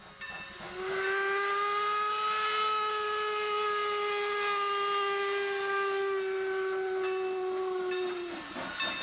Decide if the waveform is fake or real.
real